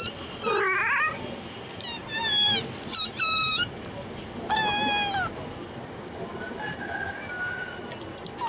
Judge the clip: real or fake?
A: real